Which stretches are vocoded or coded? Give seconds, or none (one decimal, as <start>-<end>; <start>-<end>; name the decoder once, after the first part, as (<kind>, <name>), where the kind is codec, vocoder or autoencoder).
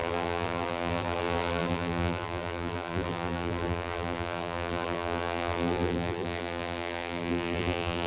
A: 0.0-8.1 (vocoder, BigVGAN v2)